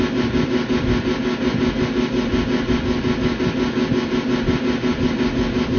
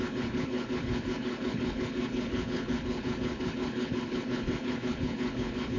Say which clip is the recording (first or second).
first